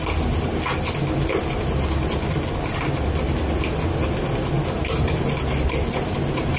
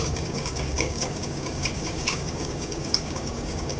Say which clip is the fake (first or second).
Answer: second